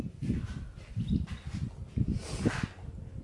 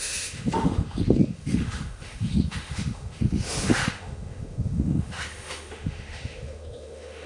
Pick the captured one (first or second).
first